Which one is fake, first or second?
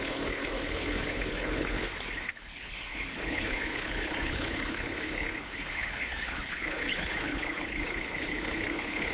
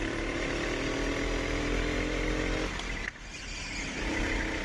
first